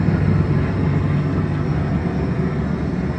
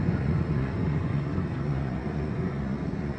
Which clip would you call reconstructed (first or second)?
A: second